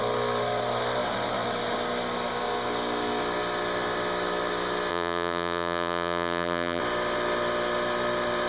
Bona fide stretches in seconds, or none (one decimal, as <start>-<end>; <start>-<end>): 0.0-4.9; 6.8-8.5